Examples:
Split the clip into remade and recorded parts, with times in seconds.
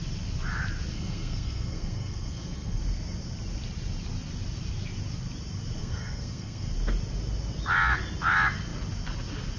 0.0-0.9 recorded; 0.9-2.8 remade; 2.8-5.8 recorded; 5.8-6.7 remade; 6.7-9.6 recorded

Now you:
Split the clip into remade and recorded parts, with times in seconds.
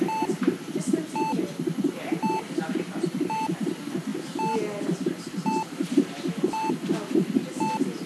0.0-8.1 recorded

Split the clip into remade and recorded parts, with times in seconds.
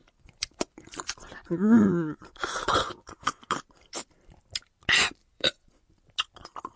0.0-3.5 remade; 3.5-5.2 recorded; 5.2-5.9 remade; 5.9-6.8 recorded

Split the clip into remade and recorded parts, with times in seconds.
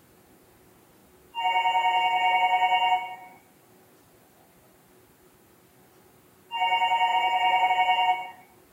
0.0-7.1 recorded; 7.1-7.7 remade; 7.7-8.7 recorded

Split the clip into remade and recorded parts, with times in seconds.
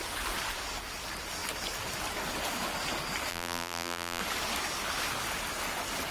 0.0-3.3 recorded; 3.3-4.2 remade; 4.2-6.1 recorded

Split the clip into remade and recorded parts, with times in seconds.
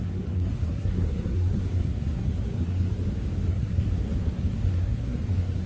0.0-3.0 remade; 3.0-3.5 recorded; 3.5-5.7 remade